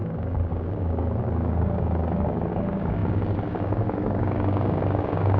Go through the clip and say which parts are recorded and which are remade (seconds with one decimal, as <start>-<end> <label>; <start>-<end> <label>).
0.0-5.4 remade